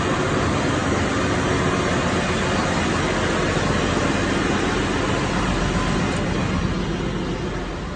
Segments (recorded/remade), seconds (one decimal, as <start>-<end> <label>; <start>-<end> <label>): 0.0-8.0 recorded